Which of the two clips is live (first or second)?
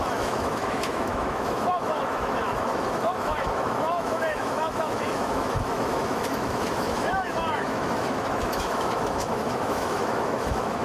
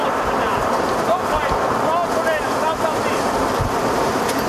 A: second